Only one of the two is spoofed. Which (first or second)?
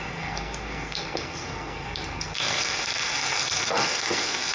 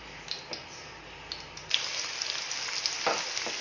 first